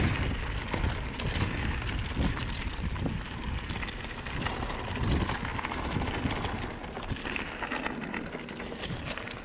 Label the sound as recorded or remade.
recorded